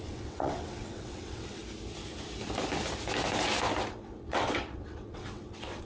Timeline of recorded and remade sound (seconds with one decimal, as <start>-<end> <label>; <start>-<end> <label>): 0.0-1.6 remade; 1.6-3.9 recorded; 3.9-5.8 remade